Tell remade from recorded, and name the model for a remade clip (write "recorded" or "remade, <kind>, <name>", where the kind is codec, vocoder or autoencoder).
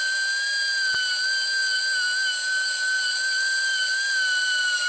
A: recorded